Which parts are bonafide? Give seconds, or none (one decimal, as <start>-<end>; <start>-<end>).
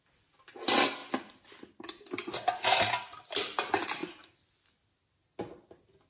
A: 0.0-6.1